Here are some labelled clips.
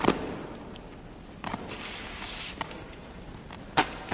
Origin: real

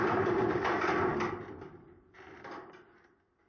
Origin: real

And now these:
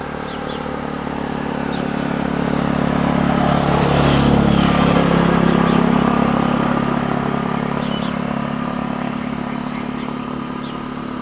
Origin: real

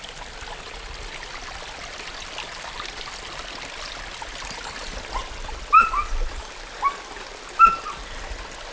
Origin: real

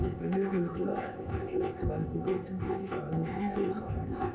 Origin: fake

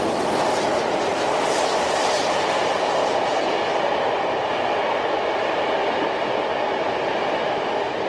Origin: real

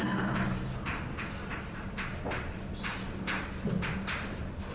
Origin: real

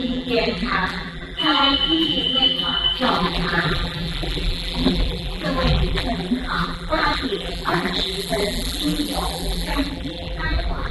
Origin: fake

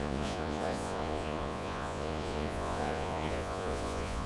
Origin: fake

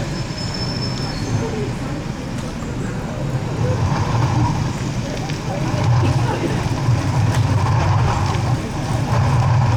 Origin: real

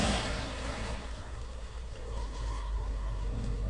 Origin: fake